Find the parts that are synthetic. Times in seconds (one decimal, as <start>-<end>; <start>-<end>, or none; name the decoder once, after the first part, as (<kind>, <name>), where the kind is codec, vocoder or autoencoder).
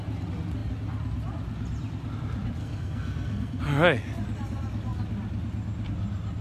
2.6-3.6 (codec, SNAC)